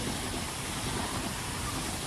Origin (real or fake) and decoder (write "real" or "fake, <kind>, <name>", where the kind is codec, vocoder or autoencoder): real